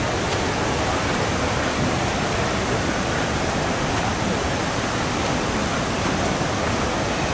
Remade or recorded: recorded